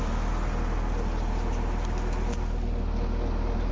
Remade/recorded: recorded